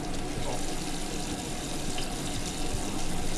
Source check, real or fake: real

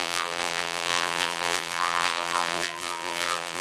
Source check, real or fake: fake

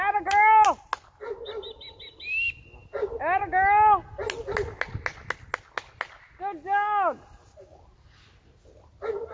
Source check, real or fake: real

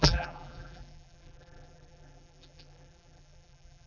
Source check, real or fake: fake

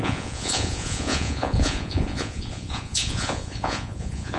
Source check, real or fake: fake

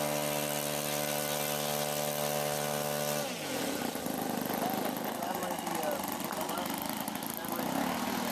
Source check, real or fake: real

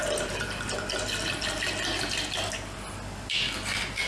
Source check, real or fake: real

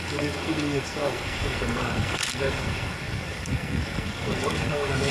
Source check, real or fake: fake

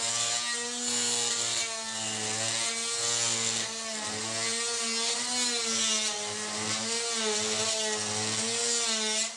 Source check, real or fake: real